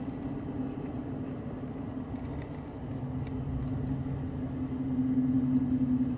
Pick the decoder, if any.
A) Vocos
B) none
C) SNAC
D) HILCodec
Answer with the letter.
B